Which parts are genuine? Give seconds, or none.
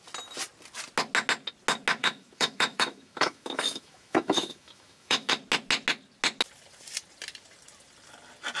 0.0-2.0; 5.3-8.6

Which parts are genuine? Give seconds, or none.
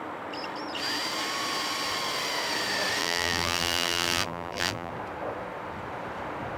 0.0-3.0; 4.9-6.6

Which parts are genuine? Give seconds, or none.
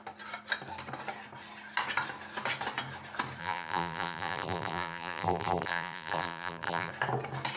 0.0-3.4; 6.9-7.6